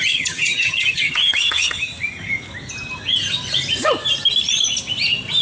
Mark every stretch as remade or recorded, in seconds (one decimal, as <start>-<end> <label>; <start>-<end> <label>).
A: 0.0-1.9 remade; 1.9-5.4 recorded